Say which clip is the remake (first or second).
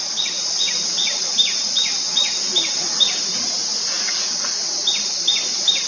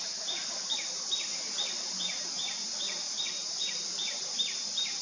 second